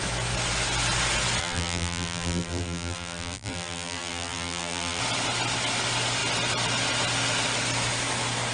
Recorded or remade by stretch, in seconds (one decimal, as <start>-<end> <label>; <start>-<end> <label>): 0.0-1.4 recorded; 1.4-5.0 remade; 5.0-8.5 recorded